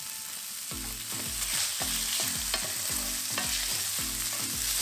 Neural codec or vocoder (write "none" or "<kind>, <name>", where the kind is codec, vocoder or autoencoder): none